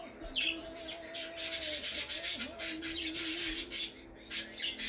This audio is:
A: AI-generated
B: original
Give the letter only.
B